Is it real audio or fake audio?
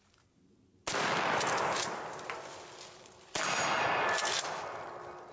real